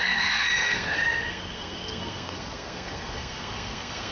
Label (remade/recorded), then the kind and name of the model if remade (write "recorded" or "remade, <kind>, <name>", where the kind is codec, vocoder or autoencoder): remade, codec, SNAC